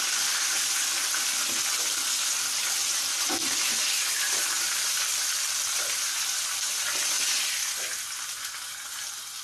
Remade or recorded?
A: recorded